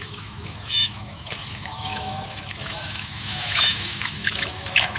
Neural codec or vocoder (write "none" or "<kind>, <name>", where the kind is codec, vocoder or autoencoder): autoencoder, DAC-VAE